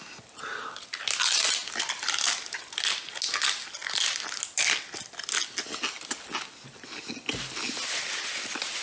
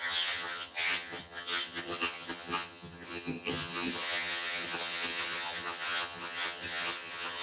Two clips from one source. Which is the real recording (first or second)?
first